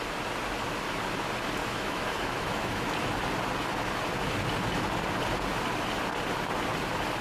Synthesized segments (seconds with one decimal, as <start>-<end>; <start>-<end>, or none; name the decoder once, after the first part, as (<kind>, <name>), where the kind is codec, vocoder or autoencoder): 1.6-2.8 (autoencoder, DAC-VAE)